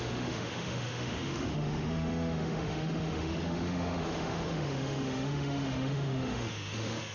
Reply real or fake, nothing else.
fake